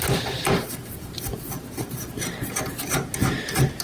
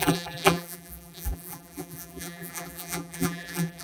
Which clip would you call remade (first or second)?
second